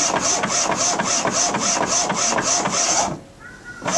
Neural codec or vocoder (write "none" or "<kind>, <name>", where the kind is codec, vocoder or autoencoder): none